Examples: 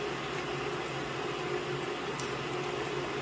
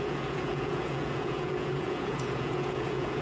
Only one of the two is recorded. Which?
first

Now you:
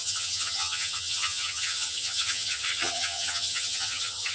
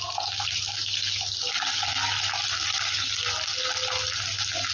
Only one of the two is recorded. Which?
second